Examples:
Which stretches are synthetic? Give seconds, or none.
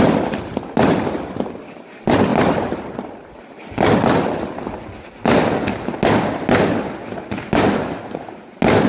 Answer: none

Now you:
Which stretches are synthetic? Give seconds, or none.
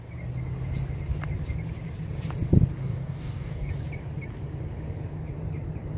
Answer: 2.8-3.7 (codec, DAC)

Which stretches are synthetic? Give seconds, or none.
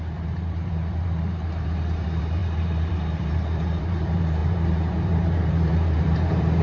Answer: 0.0-6.6 (vocoder, BigVGAN v2)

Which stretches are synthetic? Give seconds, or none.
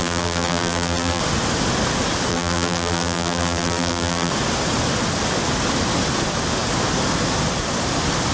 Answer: 0.0-1.2 (vocoder, BigVGAN v2); 2.3-4.3